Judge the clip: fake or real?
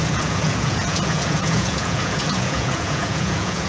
fake